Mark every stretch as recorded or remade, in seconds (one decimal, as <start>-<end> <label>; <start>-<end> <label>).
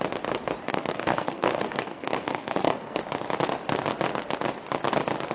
0.0-0.7 recorded; 0.7-3.0 remade; 3.0-5.3 recorded